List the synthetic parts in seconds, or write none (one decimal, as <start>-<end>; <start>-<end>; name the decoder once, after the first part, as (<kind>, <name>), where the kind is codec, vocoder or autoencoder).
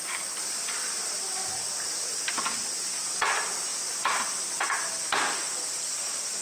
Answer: none